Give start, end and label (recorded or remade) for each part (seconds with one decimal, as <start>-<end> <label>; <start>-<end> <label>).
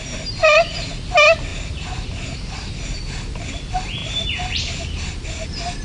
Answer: 0.0-0.4 recorded; 0.4-0.9 remade; 0.9-1.5 recorded; 1.5-2.7 remade; 2.7-4.0 recorded; 4.0-5.1 remade; 5.1-5.8 recorded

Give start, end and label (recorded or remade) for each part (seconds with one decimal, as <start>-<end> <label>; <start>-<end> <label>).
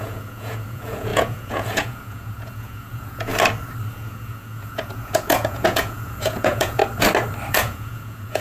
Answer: 0.0-3.3 remade; 3.3-3.9 recorded; 3.9-6.8 remade; 6.8-7.5 recorded; 7.5-8.4 remade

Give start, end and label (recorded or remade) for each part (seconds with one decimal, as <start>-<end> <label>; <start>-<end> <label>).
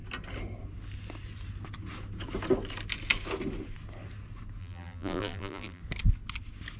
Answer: 0.0-4.6 recorded; 4.6-5.8 remade; 5.8-6.8 recorded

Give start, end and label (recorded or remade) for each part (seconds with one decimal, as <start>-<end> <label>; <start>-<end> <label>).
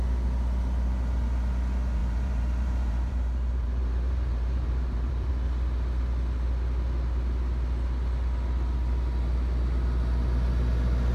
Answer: 0.0-2.0 recorded; 2.0-5.3 remade; 5.3-11.1 recorded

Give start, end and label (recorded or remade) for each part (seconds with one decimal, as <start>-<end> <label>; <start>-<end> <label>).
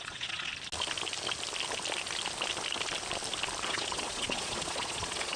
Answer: 0.0-0.5 remade; 0.5-3.7 recorded; 3.7-5.4 remade